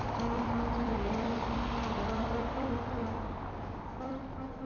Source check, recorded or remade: remade